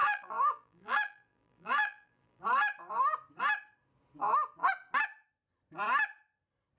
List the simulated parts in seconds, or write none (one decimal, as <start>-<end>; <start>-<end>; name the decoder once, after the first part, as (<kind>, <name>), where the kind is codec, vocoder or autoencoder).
0.0-2.4 (vocoder, BigVGAN v2)